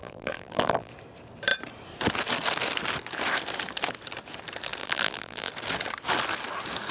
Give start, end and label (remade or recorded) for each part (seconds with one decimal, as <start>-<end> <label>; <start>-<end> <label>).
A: 0.0-0.9 remade; 0.9-4.8 recorded; 4.8-5.5 remade; 5.5-6.9 recorded